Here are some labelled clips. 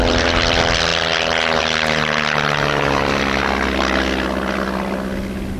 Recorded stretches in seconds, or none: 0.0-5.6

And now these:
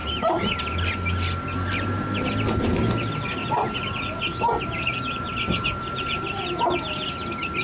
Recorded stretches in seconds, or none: 0.6-3.4; 6.6-7.6

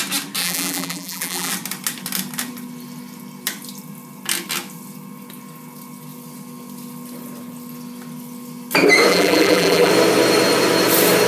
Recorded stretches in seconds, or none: 0.0-0.4; 1.5-9.1; 9.9-11.3

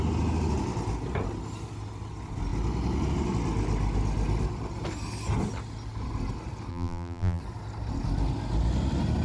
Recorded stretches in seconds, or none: 0.0-6.7; 7.4-9.2

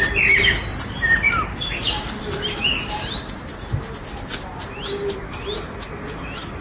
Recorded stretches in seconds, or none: 0.0-0.7; 3.7-6.6

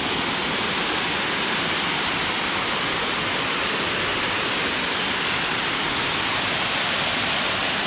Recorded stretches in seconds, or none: 3.2-5.1

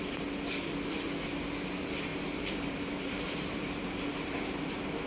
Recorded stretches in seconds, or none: 0.0-2.1

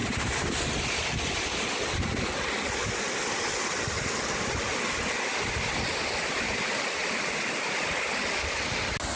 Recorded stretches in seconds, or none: 0.7-9.2